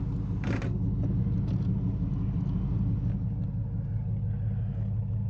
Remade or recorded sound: recorded